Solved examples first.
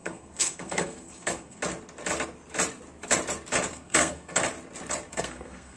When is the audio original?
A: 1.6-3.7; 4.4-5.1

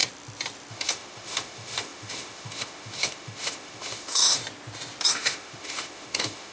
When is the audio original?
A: 0.0-0.7; 4.4-5.1

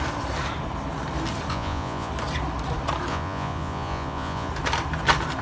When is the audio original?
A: 0.0-1.5; 2.1-3.1; 4.5-5.4

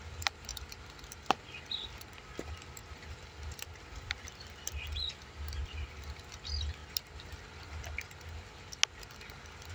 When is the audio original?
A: 0.0-2.8; 4.8-5.6; 6.2-9.7

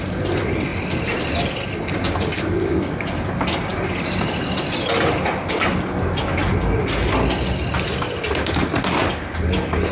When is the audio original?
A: 0.0-0.7; 2.8-9.9

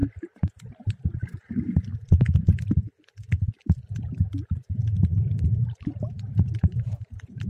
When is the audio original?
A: 1.9-5.2